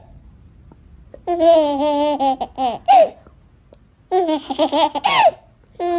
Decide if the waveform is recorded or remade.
recorded